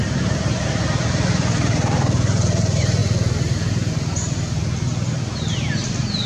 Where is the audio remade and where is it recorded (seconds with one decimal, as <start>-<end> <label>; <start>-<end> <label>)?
0.0-2.6 remade; 2.6-6.3 recorded